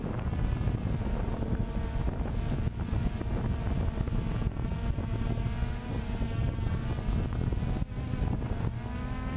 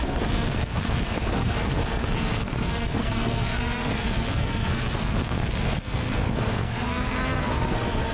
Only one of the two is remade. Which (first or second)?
second